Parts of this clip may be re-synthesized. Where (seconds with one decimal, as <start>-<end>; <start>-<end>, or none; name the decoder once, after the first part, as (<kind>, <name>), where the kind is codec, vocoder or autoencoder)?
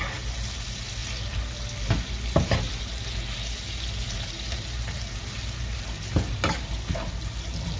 none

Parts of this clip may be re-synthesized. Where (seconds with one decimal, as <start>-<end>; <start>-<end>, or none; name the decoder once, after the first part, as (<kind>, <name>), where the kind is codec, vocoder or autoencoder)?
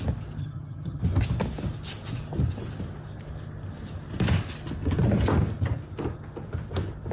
0.4-1.0 (vocoder, HiFi-GAN)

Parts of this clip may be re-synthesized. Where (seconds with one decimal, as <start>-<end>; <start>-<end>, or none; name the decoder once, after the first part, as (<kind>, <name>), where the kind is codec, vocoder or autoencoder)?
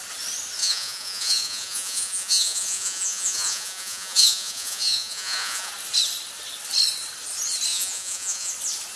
0.6-5.7 (vocoder, Vocos); 7.7-8.5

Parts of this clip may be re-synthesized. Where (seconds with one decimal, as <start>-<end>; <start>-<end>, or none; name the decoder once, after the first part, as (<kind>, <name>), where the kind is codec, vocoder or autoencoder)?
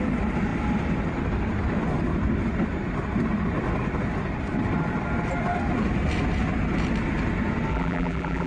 7.7-8.5 (vocoder, BigVGAN v2)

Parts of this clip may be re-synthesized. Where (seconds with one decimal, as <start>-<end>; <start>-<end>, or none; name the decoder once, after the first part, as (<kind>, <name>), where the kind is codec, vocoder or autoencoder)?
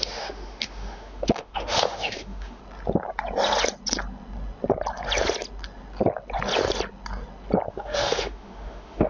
0.0-2.6 (autoencoder, DAC-VAE); 7.7-9.1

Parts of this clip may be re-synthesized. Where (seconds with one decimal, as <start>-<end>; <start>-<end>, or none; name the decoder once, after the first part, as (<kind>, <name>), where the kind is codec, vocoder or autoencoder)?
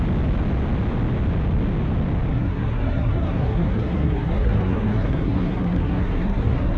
2.3-6.8 (codec, SNAC)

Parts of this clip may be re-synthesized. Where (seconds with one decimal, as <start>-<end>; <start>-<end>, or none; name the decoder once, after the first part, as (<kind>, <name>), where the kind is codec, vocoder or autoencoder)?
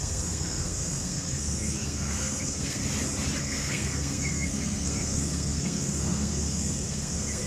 0.0-2.8 (codec, SNAC); 3.4-7.5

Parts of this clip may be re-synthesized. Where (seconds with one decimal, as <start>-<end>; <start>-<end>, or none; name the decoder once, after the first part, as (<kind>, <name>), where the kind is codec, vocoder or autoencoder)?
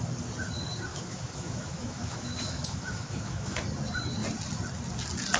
0.9-3.6 (autoencoder, DAC-VAE)